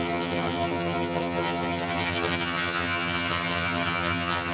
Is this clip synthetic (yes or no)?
yes